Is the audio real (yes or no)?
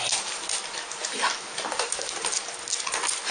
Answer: yes